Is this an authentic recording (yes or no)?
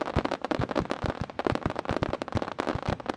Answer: yes